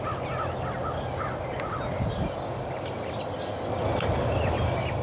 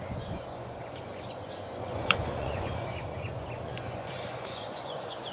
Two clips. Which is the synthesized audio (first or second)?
second